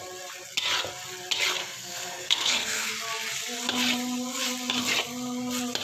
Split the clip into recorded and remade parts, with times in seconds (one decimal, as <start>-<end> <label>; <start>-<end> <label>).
0.0-1.6 recorded; 1.6-2.9 remade; 2.9-5.8 recorded